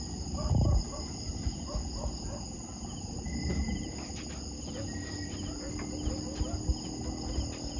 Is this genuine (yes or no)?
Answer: yes